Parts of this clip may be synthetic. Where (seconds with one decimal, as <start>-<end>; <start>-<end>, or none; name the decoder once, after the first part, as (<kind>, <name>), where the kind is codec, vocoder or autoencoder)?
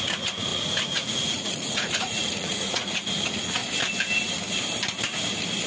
0.0-3.6 (vocoder, Vocos)